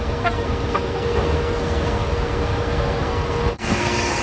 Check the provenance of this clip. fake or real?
fake